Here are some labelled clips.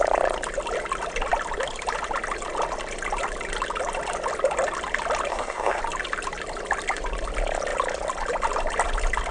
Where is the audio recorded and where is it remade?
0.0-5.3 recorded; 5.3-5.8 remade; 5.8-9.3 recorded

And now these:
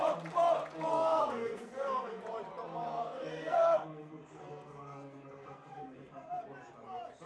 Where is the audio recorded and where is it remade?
0.0-0.9 recorded; 0.9-2.2 remade; 2.2-3.0 recorded; 3.0-6.4 remade; 6.4-7.3 recorded